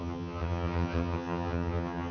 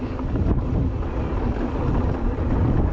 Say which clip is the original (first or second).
second